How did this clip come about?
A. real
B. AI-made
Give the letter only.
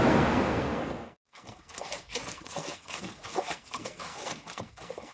B